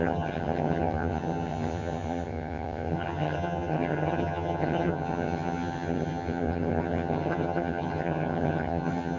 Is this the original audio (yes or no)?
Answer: no